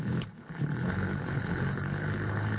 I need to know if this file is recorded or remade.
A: remade